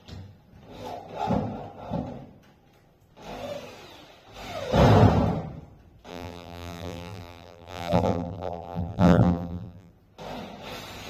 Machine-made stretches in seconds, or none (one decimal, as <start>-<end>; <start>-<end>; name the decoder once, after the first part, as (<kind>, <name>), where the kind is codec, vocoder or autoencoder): 6.1-9.9 (vocoder, BigVGAN v2)